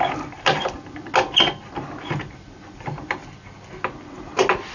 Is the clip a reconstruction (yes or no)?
no